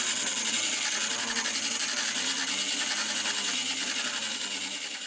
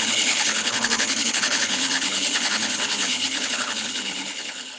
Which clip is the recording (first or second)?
first